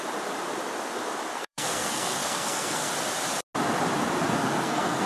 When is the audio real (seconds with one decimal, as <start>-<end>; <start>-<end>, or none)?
0.0-1.3; 2.9-4.4